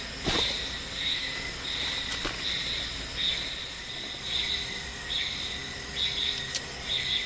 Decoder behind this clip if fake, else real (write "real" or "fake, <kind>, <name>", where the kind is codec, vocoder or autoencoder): real